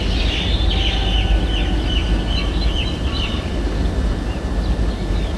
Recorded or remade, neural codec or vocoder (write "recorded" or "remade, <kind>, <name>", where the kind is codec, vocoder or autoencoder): recorded